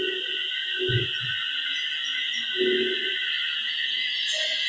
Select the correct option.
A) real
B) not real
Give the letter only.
A